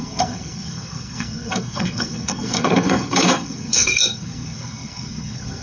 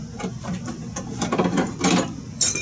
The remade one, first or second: first